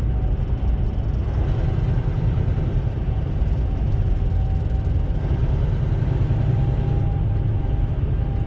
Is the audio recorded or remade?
recorded